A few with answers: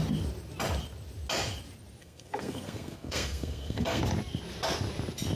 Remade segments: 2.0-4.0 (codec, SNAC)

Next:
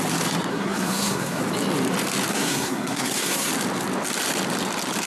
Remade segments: 0.5-1.4 (codec, SNAC); 2.3-3.5

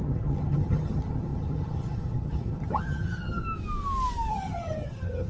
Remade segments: 0.0-3.4 (vocoder, HiFi-GAN); 4.3-5.3